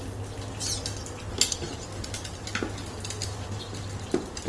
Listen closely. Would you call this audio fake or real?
real